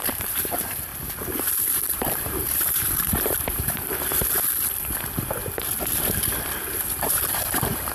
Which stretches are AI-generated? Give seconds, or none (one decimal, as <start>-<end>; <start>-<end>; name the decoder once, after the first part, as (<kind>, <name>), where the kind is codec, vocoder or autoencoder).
0.0-0.9 (vocoder, BigVGAN v2); 1.8-4.2; 7.0-7.9